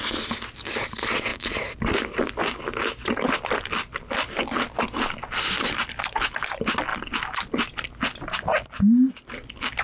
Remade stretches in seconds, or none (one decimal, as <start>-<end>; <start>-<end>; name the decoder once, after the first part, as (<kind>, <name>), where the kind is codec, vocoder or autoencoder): 1.3-4.4 (vocoder, BigVGAN v2)